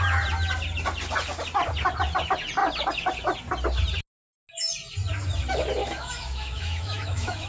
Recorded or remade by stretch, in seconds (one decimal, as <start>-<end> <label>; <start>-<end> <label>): 0.0-5.8 recorded; 5.8-7.5 remade